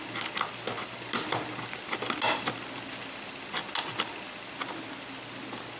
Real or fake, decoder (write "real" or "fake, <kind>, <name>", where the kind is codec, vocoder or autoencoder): real